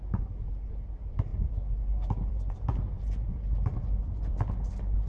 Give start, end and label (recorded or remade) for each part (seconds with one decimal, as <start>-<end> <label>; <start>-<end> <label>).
0.0-5.1 recorded